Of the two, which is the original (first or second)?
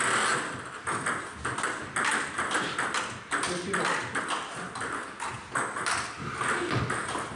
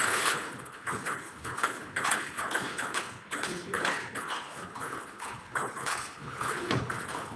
first